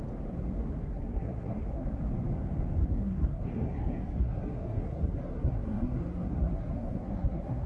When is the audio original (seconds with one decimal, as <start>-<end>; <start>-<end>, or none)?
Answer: 0.0-0.8; 2.0-2.8